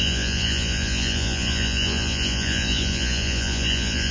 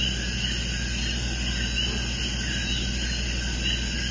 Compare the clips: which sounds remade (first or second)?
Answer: first